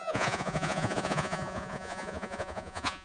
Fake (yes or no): yes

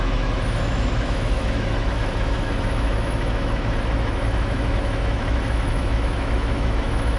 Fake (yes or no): yes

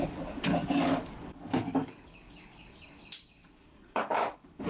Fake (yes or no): yes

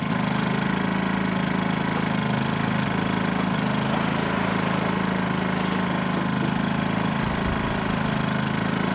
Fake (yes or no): no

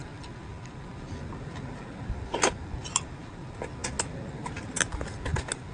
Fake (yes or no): no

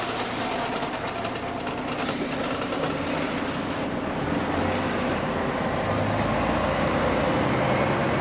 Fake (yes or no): no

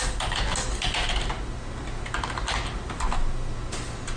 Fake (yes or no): no